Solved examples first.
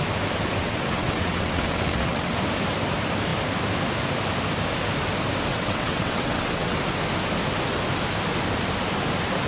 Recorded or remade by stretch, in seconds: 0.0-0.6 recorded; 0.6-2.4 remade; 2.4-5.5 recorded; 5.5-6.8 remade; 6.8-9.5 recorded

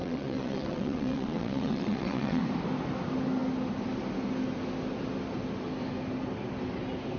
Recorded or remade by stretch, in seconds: 0.0-2.4 remade; 2.4-7.2 recorded

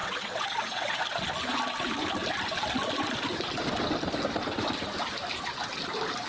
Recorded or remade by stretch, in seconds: 0.0-1.0 remade; 1.0-6.3 recorded

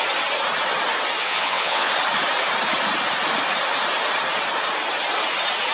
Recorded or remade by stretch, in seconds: 0.0-1.2 recorded; 1.2-1.9 remade; 1.9-5.7 recorded